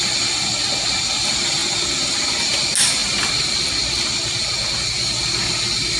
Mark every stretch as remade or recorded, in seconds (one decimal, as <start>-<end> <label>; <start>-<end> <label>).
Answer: 0.0-6.0 recorded